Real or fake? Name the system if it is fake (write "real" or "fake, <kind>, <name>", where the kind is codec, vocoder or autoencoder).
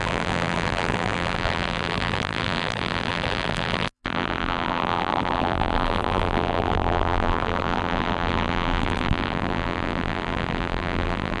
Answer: fake, vocoder, BigVGAN v2